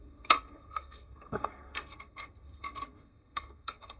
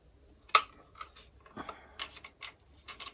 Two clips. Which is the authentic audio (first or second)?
second